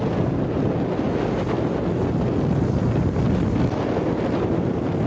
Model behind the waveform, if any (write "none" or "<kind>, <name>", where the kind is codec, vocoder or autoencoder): none